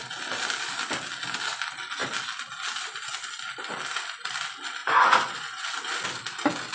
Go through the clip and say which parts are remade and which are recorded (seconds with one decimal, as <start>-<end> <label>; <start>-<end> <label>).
0.0-4.8 recorded; 4.8-5.6 remade; 5.6-6.7 recorded